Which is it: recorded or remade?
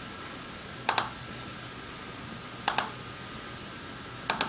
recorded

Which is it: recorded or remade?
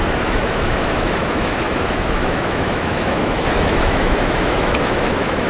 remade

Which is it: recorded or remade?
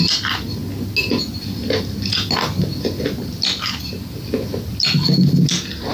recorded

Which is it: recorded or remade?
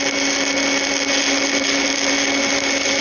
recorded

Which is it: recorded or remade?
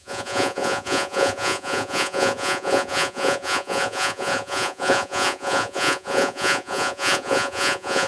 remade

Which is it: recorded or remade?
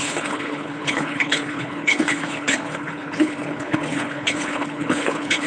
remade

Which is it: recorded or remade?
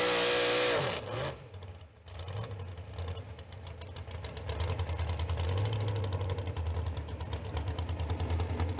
recorded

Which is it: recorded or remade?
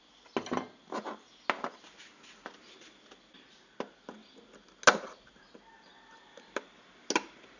recorded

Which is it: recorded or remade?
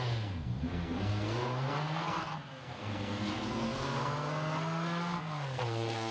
remade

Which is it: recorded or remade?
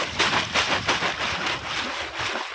recorded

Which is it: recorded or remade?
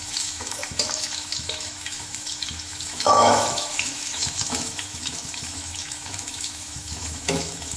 remade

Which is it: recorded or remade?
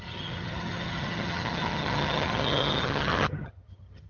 remade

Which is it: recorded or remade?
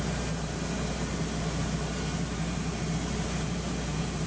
recorded